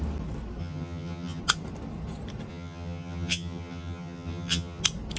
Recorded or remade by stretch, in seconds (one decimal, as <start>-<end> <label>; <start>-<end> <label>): 0.0-0.6 recorded; 0.6-1.4 remade; 1.4-2.5 recorded; 2.5-4.8 remade; 4.8-5.2 recorded